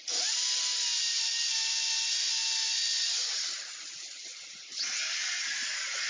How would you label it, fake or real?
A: real